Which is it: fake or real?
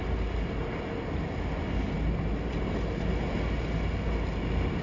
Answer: real